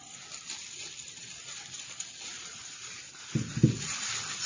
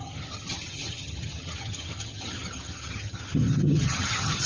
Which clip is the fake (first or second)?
second